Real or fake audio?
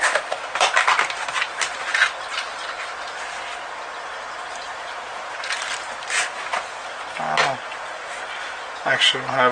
real